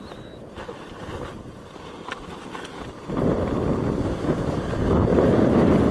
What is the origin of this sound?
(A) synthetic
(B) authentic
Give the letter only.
B